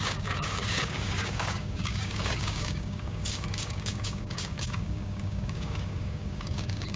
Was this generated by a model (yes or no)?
yes